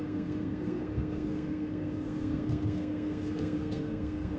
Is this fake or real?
fake